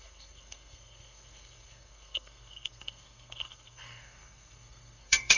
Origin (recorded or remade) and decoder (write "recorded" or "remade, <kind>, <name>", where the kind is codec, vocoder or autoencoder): remade, codec, SNAC